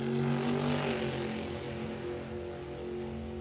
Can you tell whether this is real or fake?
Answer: real